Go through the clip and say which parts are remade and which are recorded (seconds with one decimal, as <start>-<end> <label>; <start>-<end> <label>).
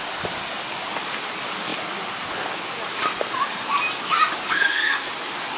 0.0-4.4 recorded; 4.4-5.1 remade; 5.1-5.6 recorded